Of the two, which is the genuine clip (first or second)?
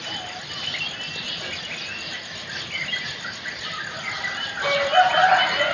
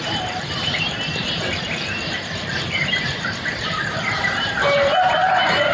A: first